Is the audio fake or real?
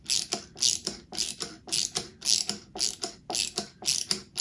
real